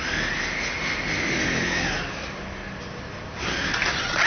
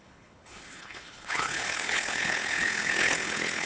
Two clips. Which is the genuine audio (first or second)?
first